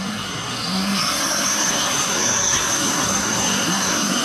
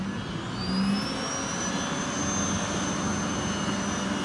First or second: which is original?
second